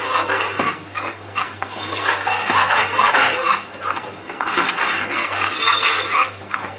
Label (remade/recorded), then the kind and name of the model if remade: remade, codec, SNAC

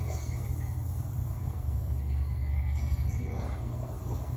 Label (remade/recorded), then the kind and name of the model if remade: remade, codec, SNAC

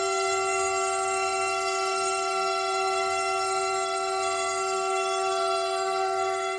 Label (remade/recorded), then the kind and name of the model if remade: remade, codec, SNAC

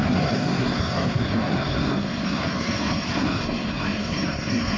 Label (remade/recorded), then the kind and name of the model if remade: remade, codec, SNAC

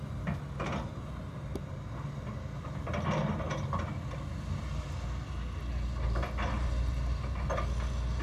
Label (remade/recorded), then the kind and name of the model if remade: recorded